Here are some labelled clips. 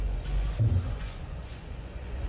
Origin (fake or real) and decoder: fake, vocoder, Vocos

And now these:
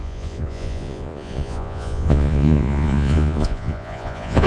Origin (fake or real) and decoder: fake, vocoder, Vocos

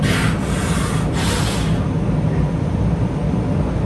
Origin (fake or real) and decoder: real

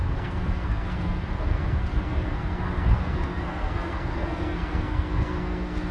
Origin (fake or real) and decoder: fake, codec, SNAC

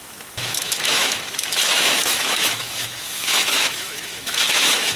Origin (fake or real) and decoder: fake, autoencoder, DAC-VAE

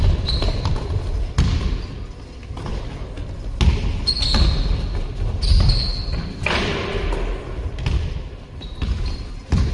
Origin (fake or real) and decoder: real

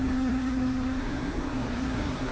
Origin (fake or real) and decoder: fake, codec, SNAC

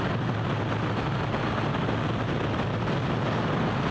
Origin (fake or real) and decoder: real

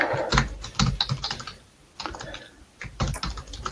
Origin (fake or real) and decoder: real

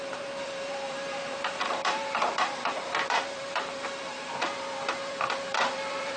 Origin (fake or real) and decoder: fake, vocoder, BigVGAN v2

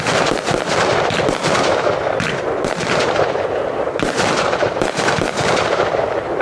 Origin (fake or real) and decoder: fake, vocoder, BigVGAN v2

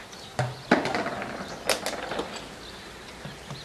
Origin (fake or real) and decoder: real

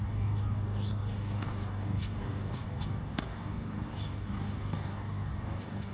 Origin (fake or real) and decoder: fake, codec, DAC